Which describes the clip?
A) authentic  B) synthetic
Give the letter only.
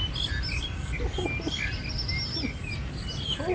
A